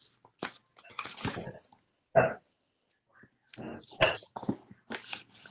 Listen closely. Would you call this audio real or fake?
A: real